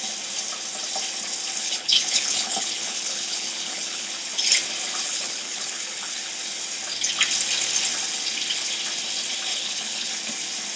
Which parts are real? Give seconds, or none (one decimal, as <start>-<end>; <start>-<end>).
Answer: 0.0-1.6; 4.1-5.0; 6.2-9.5; 10.1-10.8